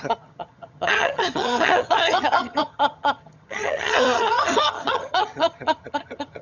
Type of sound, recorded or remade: remade